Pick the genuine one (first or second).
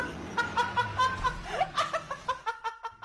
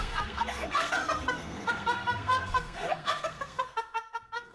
first